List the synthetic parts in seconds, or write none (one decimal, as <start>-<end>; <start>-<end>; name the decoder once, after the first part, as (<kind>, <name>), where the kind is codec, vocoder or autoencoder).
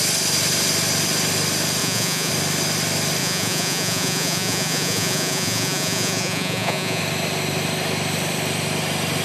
1.8-2.3 (vocoder, Vocos); 3.2-7.0